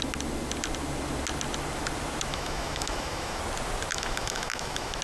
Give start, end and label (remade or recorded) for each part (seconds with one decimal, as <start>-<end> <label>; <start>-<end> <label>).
0.0-2.3 recorded; 2.3-3.4 remade; 3.4-3.9 recorded; 3.9-5.0 remade